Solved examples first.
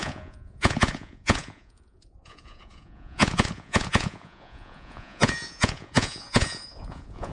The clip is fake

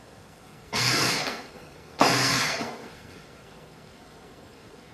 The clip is fake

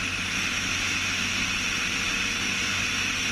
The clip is real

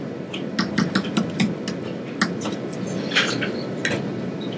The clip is real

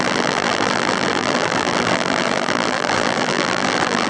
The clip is fake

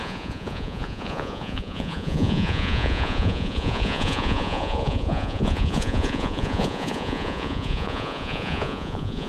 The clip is fake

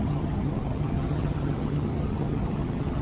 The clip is fake